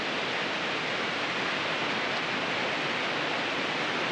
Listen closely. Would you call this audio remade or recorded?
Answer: recorded